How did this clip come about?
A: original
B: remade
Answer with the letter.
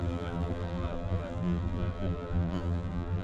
B